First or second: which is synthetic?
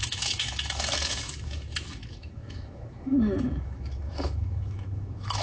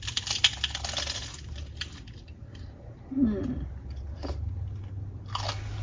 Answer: first